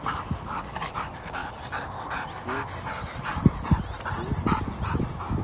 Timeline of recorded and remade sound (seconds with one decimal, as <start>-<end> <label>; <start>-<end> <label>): 0.0-5.4 recorded